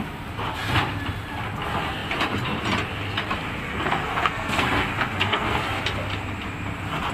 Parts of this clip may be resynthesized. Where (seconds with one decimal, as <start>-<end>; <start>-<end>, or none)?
3.6-5.6

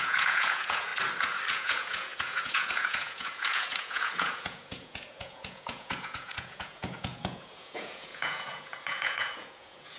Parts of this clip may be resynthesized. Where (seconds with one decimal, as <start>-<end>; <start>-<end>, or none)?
0.0-0.9; 1.5-10.0

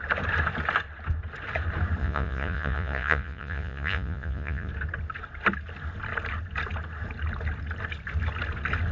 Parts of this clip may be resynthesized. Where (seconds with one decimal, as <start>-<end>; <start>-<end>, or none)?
2.0-4.7

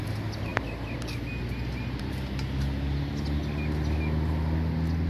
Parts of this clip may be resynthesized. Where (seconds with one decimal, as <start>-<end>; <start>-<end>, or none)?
none

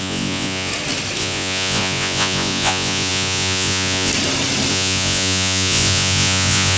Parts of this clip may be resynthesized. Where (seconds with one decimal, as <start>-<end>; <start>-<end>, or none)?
0.0-0.7; 1.2-4.1; 4.7-6.8

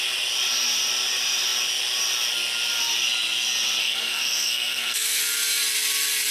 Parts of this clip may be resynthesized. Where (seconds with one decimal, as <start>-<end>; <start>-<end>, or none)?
3.8-5.2

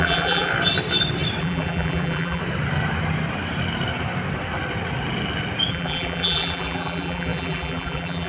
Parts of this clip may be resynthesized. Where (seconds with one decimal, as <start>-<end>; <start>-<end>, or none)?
0.0-0.5; 1.4-2.4; 5.7-8.3